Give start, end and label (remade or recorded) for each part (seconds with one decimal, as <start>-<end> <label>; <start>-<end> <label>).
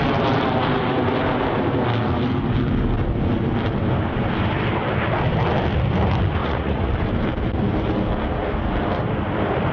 0.0-6.4 recorded; 6.4-6.9 remade; 6.9-9.7 recorded